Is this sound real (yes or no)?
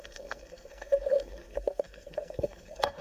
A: no